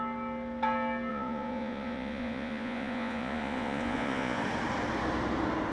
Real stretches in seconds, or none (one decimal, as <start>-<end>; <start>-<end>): 0.0-1.1; 4.4-5.7